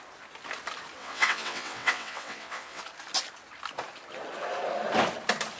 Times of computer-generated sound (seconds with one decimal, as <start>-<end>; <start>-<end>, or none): 1.0-2.8